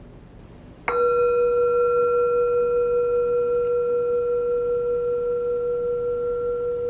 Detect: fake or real real